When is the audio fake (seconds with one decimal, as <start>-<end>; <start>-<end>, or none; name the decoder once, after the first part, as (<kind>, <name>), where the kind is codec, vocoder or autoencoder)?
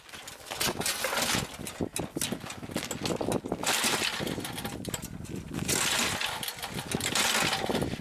6.5-7.2 (vocoder, BigVGAN v2)